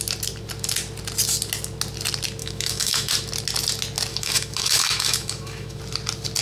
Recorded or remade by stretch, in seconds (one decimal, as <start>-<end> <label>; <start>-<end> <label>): 0.0-2.4 recorded; 2.4-3.1 remade; 3.1-4.1 recorded; 4.1-5.8 remade; 5.8-6.4 recorded